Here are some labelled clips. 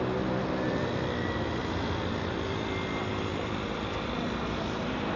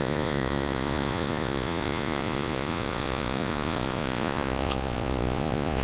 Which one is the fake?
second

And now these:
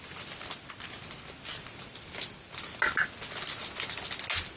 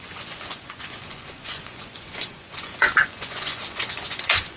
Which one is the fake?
second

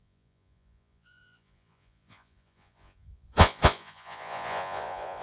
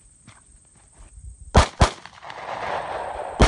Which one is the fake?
first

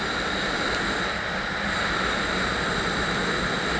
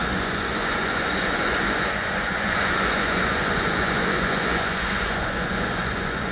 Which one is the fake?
second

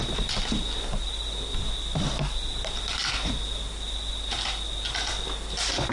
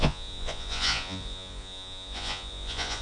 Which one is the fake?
second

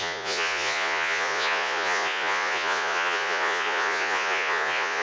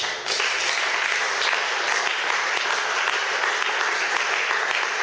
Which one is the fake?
first